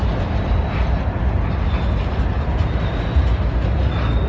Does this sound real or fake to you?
real